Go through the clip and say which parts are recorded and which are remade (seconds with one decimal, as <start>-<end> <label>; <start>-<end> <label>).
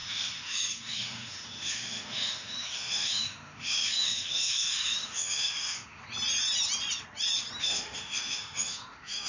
0.0-6.0 remade; 6.0-7.6 recorded; 7.6-9.3 remade